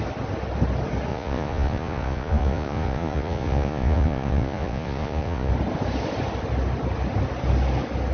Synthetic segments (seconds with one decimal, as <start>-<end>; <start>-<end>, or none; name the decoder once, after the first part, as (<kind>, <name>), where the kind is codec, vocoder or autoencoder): 1.1-5.5 (vocoder, Vocos)